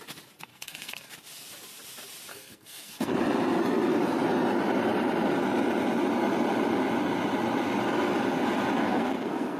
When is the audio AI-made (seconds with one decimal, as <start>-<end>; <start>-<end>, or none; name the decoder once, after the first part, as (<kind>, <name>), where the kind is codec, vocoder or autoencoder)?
0.5-1.1 (codec, SNAC); 2.3-3.2; 8.8-9.6